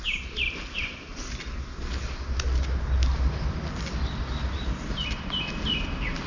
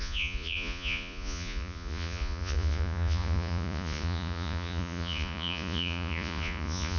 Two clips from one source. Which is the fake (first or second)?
second